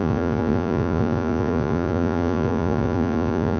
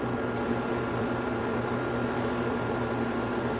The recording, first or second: second